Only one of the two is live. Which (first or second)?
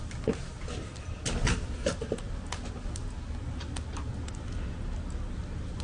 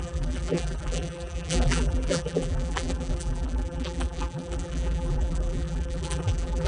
first